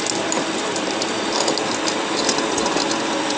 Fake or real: real